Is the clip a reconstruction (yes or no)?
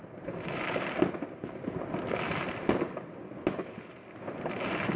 no